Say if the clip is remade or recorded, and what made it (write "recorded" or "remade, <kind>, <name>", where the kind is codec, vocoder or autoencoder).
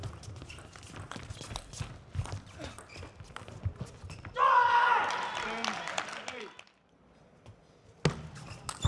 recorded